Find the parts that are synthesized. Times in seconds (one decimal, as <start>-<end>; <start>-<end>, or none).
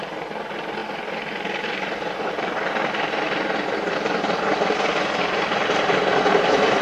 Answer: 0.0-6.8